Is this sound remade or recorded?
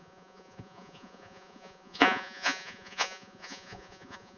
remade